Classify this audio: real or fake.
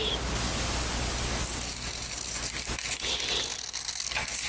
real